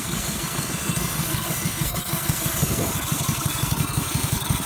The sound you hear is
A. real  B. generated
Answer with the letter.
B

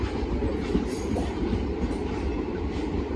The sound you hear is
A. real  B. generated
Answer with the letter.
B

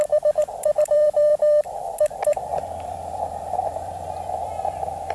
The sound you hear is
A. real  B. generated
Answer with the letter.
B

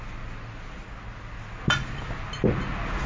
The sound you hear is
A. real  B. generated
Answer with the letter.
A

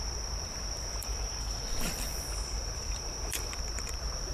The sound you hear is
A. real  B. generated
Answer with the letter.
B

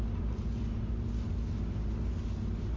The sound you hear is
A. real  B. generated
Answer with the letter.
A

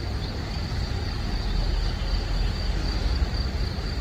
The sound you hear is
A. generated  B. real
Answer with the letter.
B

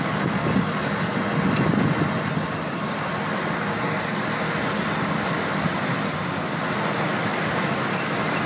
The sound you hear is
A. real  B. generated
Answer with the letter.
A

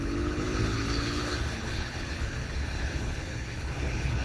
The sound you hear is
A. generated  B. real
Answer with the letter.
A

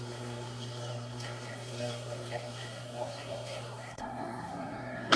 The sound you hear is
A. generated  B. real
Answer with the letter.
A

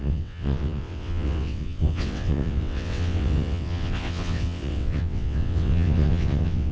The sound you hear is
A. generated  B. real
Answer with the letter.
A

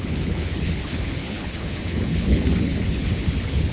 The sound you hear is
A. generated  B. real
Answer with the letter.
A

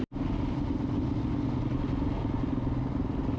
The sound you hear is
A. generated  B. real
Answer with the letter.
B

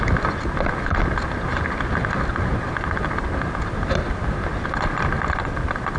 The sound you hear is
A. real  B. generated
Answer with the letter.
A